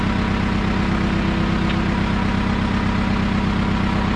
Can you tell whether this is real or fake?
real